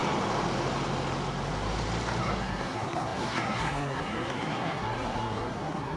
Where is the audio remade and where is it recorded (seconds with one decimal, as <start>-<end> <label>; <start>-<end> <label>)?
0.0-2.2 recorded; 2.2-6.0 remade